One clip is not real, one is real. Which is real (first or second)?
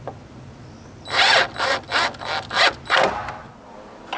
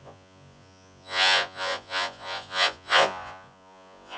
first